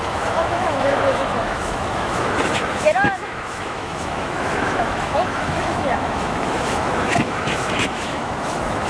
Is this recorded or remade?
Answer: remade